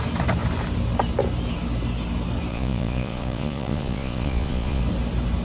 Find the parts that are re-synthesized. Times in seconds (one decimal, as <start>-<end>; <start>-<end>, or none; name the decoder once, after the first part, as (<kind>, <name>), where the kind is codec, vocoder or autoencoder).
2.5-4.8 (vocoder, Vocos)

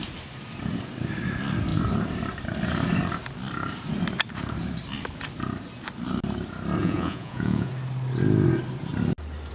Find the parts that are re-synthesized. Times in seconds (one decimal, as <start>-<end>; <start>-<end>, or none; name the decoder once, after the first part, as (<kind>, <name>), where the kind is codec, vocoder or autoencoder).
6.8-7.7 (vocoder, Vocos)

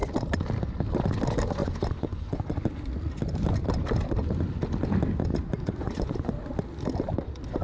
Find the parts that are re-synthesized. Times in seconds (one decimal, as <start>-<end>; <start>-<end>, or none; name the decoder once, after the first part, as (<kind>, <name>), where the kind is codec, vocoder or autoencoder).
1.6-2.6 (vocoder, Vocos); 5.2-6.3